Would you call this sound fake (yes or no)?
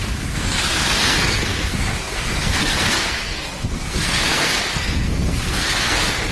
yes